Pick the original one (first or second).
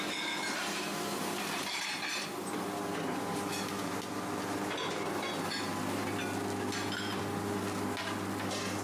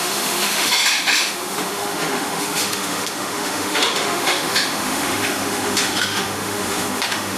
first